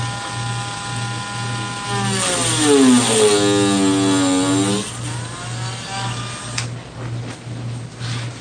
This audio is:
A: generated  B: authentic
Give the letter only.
B